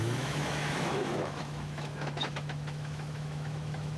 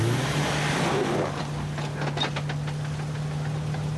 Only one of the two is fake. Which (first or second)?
first